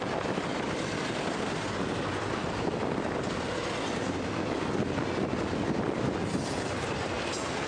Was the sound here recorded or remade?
recorded